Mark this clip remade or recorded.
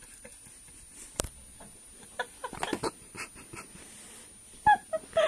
recorded